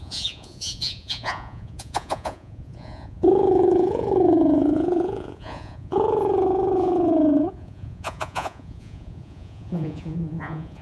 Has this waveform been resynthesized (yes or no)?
yes